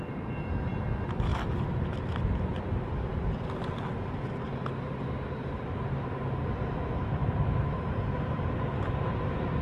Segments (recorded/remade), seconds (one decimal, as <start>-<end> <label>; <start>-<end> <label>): 0.0-5.4 recorded; 5.4-6.1 remade; 6.1-7.2 recorded; 7.2-8.7 remade; 8.7-9.6 recorded

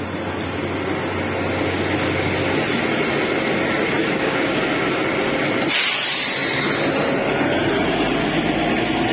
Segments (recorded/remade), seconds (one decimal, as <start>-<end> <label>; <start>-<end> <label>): 0.0-4.0 recorded; 4.0-4.5 remade; 4.5-9.1 recorded

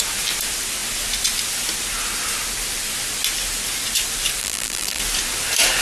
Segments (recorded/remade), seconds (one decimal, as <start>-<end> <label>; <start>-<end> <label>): 0.0-4.4 recorded; 4.4-5.0 remade; 5.0-5.8 recorded

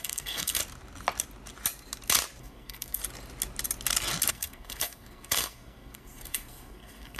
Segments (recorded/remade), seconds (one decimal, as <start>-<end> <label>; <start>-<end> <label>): 0.0-0.6 remade; 0.6-2.4 recorded; 2.4-3.0 remade; 3.0-4.3 recorded; 4.3-7.2 remade

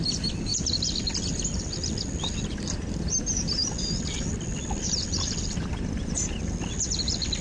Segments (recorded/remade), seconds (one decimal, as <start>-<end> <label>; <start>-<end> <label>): 0.0-7.4 remade

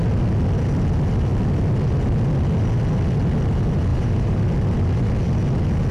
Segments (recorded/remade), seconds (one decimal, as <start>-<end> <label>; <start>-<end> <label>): 0.0-3.9 recorded; 3.9-4.4 remade; 4.4-5.9 recorded